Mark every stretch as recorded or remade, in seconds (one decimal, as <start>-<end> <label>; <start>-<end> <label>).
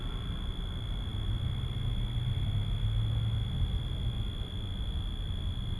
0.0-5.8 recorded